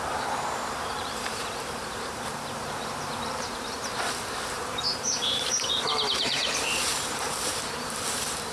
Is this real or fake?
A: fake